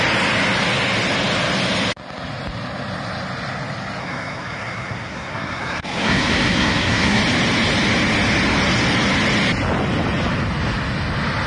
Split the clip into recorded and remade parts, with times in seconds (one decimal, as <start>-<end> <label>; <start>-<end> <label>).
0.0-4.0 recorded; 4.0-7.2 remade; 7.2-11.5 recorded